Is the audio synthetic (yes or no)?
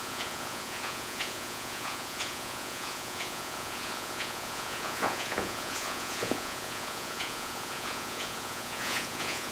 yes